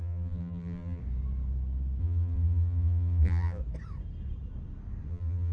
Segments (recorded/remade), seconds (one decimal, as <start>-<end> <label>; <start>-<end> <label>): 0.0-1.0 remade; 1.0-2.0 recorded; 2.0-3.6 remade; 3.6-5.1 recorded; 5.1-5.5 remade